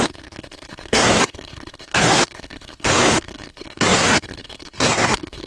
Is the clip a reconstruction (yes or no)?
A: yes